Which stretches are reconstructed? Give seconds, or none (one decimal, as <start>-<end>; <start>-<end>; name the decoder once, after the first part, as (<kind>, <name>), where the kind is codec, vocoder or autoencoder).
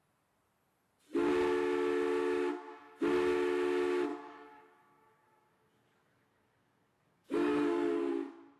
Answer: 4.1-8.1 (codec, DAC)